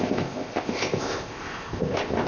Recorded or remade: remade